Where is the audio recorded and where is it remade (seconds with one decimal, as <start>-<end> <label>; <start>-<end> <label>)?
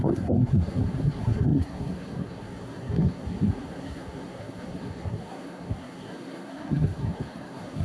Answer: 0.0-7.8 remade